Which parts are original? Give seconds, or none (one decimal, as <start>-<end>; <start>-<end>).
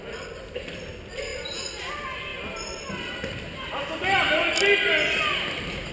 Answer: 0.0-5.9